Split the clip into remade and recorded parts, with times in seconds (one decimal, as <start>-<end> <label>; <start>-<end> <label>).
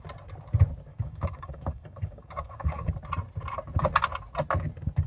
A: 0.0-0.9 recorded; 0.9-2.9 remade; 2.9-5.1 recorded